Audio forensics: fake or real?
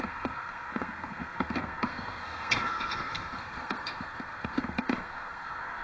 fake